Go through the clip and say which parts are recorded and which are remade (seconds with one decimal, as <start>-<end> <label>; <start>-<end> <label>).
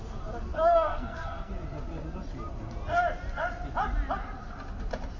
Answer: 0.0-0.5 recorded; 0.5-1.5 remade; 1.5-5.2 recorded